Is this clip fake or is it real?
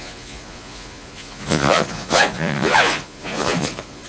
fake